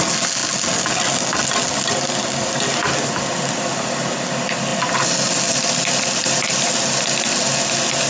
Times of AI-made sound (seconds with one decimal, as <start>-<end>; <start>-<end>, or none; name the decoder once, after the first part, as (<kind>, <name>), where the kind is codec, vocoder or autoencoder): none